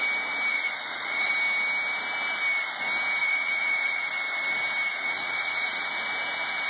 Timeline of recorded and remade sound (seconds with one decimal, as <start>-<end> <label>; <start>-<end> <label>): 0.0-0.5 recorded; 0.5-1.3 remade; 1.3-3.2 recorded; 3.2-4.1 remade; 4.1-4.9 recorded; 4.9-5.9 remade; 5.9-6.7 recorded